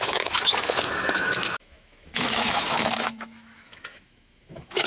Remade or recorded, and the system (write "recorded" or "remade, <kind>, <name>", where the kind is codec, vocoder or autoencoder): remade, autoencoder, DAC-VAE